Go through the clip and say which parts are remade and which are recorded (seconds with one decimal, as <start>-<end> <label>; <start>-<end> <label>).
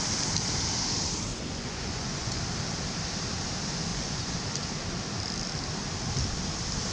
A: 0.0-1.3 recorded; 1.3-2.4 remade; 2.4-3.9 recorded; 3.9-4.4 remade; 4.4-6.9 recorded